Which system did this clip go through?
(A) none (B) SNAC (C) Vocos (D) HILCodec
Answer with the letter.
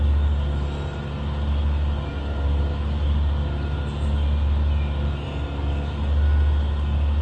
A